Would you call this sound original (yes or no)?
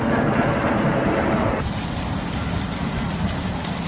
yes